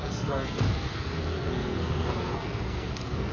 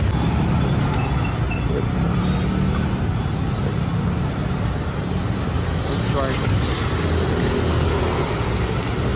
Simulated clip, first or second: first